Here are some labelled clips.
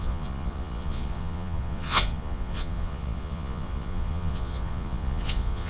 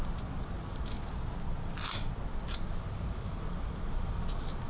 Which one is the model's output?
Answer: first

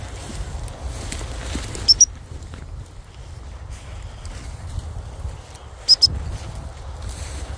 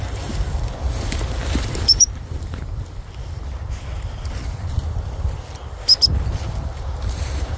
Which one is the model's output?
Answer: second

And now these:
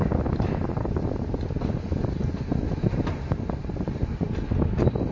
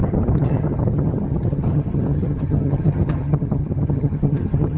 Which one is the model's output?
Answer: second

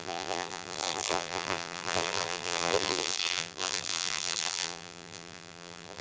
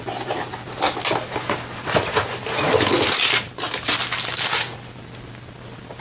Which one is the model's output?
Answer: first